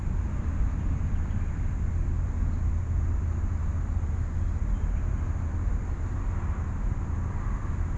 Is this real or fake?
real